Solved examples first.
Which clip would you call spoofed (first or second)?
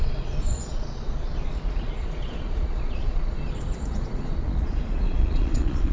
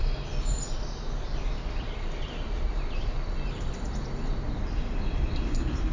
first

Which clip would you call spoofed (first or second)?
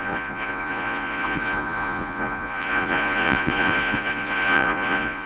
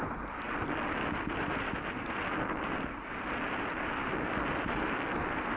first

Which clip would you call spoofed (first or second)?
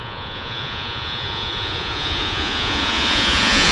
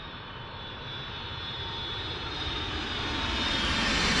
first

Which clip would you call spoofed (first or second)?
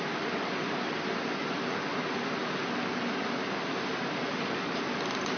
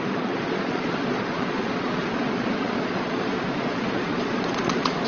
second